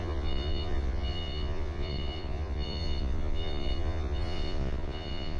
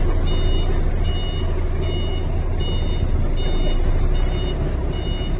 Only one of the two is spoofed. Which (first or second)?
first